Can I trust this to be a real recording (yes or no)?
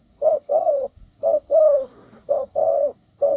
no